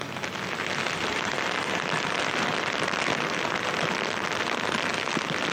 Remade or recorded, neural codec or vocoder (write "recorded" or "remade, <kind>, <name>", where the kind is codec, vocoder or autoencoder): recorded